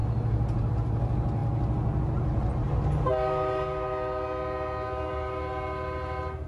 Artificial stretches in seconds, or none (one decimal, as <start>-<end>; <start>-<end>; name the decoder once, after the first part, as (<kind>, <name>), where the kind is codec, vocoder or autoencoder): none